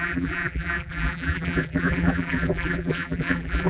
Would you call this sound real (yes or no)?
no